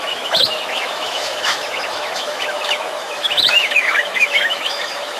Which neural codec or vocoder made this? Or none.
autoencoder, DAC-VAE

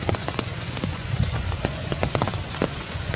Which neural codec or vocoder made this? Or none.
vocoder, Vocos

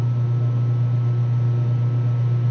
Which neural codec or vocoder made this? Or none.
none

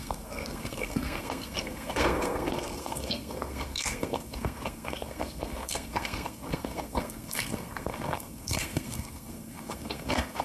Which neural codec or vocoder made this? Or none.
codec, SNAC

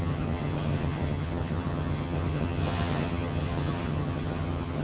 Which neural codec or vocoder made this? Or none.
vocoder, HiFi-GAN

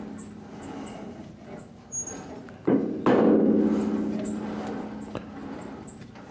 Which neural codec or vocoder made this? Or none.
none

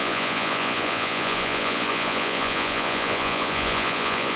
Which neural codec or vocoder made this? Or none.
vocoder, Vocos